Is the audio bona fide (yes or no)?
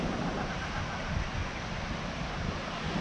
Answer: yes